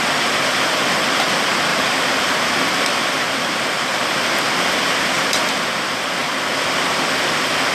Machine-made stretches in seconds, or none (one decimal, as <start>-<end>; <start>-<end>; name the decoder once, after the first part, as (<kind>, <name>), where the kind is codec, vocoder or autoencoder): 1.7-4.4 (vocoder, BigVGAN v2)